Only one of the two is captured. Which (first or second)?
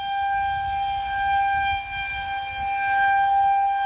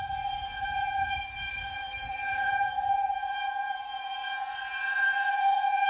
first